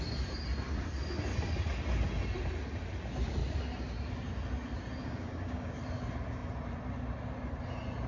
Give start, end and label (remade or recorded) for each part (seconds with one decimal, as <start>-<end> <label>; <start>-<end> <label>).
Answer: 0.0-5.0 recorded; 5.0-5.7 remade; 5.7-8.1 recorded